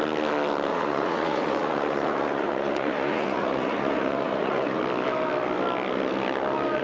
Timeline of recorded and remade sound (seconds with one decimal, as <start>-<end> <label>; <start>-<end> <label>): 0.0-0.7 recorded; 0.7-4.8 remade; 4.8-6.8 recorded